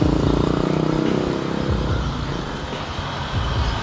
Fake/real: real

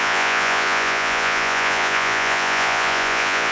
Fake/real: fake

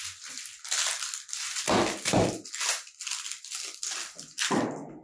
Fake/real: real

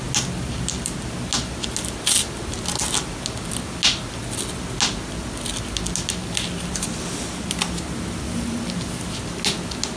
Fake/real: real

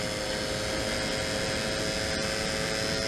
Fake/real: real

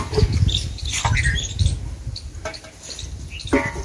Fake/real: real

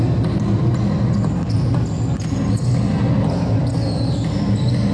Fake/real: real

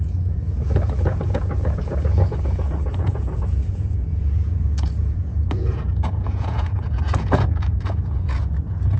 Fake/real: fake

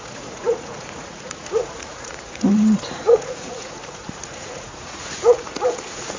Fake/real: fake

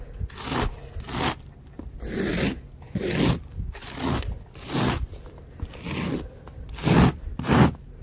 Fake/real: real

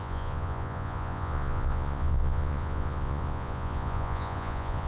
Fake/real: fake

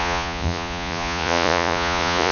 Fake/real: fake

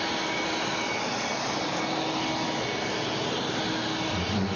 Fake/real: real